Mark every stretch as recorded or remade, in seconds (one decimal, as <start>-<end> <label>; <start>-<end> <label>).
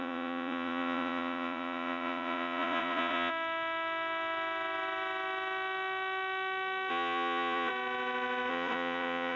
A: 0.0-3.3 remade; 3.3-6.9 recorded; 6.9-7.7 remade; 7.7-8.5 recorded; 8.5-9.4 remade